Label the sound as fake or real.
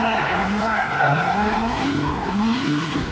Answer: fake